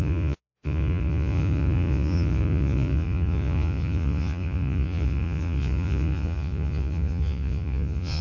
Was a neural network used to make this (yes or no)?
yes